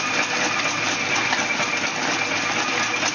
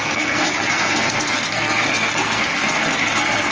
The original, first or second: first